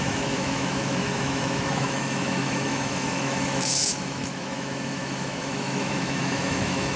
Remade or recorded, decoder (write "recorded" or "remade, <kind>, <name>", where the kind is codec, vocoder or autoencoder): remade, autoencoder, DAC-VAE